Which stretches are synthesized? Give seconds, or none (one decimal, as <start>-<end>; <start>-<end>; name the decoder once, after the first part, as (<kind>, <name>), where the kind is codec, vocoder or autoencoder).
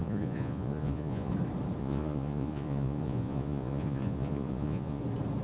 0.0-1.3 (vocoder, Vocos); 1.8-5.0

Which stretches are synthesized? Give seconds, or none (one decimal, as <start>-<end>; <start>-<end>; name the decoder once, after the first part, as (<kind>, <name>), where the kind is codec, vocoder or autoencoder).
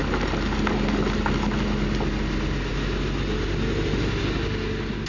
none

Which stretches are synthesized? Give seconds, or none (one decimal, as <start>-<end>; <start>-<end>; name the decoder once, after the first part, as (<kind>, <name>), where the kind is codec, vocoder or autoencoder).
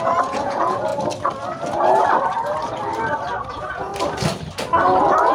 0.0-0.9 (vocoder, Vocos); 3.5-3.9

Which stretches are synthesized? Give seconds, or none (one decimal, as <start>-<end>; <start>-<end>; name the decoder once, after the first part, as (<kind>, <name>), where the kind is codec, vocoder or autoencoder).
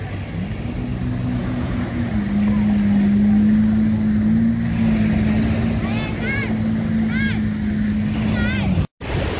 1.4-2.1 (vocoder, Vocos)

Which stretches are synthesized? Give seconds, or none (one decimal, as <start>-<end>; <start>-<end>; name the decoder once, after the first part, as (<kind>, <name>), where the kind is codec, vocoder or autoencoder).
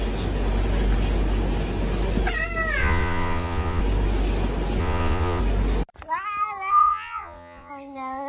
2.8-3.8 (vocoder, Vocos); 4.8-5.4; 6.7-7.7